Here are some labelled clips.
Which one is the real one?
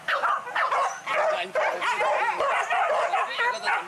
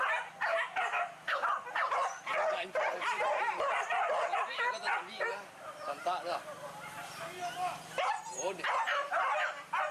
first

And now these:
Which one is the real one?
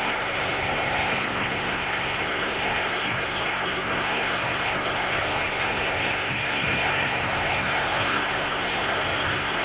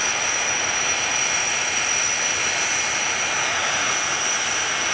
second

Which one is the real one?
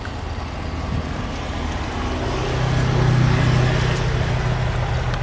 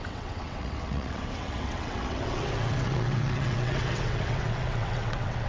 first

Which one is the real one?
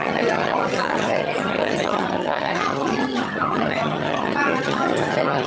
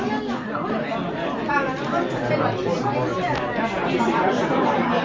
second